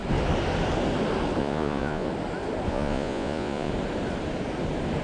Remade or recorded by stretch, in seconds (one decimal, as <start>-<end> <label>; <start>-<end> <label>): 0.0-1.4 recorded; 1.4-2.1 remade; 2.1-2.7 recorded; 2.7-3.7 remade; 3.7-5.0 recorded